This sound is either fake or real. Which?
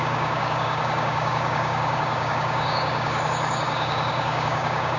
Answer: fake